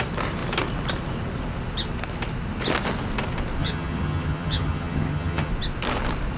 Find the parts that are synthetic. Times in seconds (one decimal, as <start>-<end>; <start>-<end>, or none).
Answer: 3.6-5.5